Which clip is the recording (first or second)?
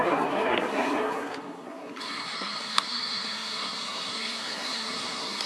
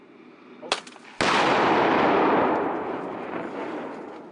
second